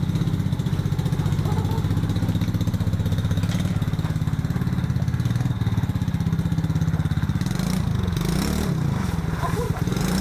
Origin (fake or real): real